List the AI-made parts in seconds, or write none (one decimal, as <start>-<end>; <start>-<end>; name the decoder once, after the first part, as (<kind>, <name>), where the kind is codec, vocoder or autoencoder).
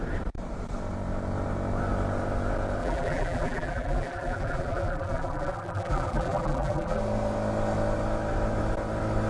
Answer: 2.8-7.0 (vocoder, BigVGAN v2)